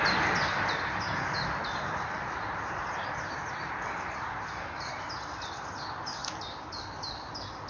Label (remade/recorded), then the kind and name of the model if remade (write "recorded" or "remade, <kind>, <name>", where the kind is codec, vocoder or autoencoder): recorded